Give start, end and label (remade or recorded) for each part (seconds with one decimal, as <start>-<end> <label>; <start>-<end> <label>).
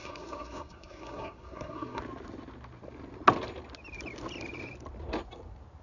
0.0-2.0 remade; 2.0-5.8 recorded